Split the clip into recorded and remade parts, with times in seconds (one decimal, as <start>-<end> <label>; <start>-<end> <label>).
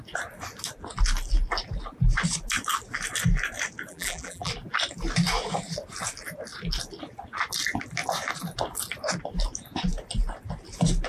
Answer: 0.0-3.9 recorded; 3.9-4.5 remade; 4.5-11.1 recorded